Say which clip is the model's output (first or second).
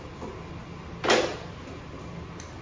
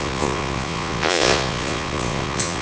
second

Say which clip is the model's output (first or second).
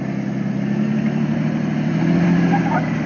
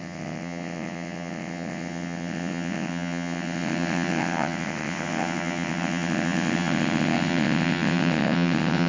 second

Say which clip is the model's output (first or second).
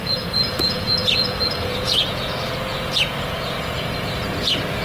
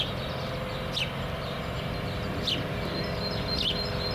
first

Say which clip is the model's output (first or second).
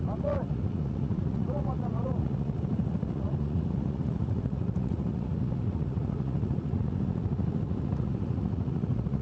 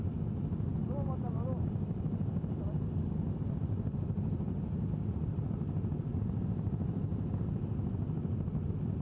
first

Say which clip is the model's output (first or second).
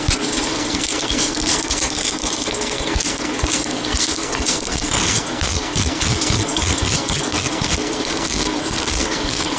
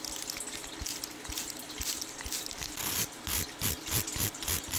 first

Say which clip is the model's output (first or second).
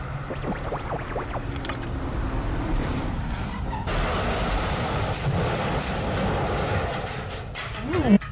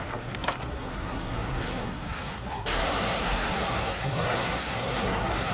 second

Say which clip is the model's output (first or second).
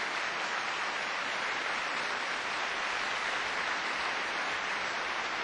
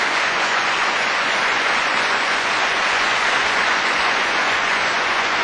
second